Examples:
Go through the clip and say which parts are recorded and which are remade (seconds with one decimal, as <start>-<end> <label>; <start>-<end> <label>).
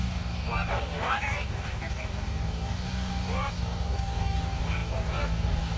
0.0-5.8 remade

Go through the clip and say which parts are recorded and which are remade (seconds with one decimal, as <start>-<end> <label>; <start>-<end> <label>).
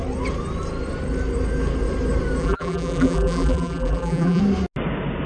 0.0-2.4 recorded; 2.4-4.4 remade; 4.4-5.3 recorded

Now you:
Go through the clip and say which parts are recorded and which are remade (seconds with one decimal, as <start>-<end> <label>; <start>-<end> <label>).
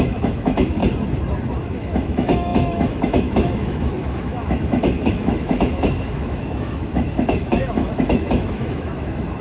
0.0-0.8 remade; 0.8-1.6 recorded; 1.6-9.4 remade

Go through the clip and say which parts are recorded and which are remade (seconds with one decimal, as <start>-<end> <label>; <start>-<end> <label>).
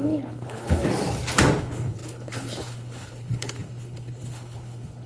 0.0-0.8 remade; 0.8-1.6 recorded; 1.6-5.1 remade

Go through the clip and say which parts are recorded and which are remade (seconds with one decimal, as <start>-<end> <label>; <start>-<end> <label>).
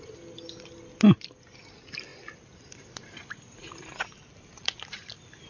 0.0-4.6 recorded; 4.6-5.1 remade; 5.1-5.5 recorded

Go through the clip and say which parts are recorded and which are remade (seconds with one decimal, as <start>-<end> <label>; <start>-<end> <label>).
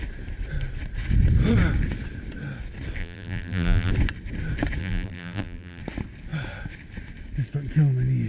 0.0-3.0 recorded; 3.0-3.9 remade; 3.9-4.8 recorded; 4.8-5.8 remade; 5.8-8.3 recorded